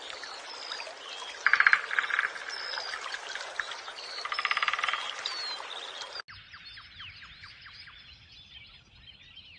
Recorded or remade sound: recorded